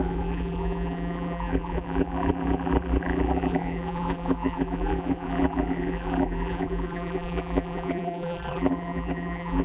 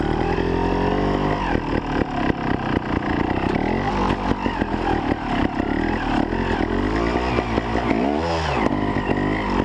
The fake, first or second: first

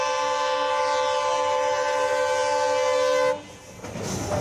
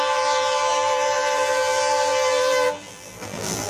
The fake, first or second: second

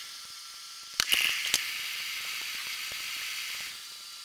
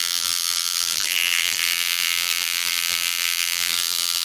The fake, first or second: second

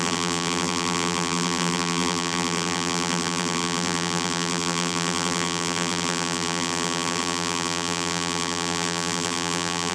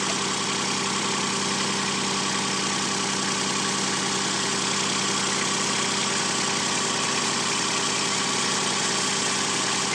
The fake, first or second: first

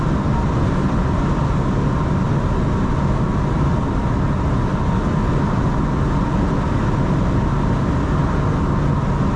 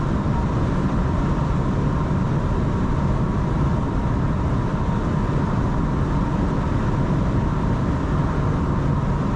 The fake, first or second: second